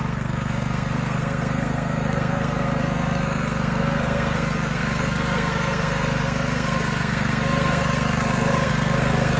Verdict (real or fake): fake